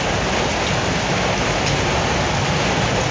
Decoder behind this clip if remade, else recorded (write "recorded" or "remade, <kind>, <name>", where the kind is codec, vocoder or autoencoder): recorded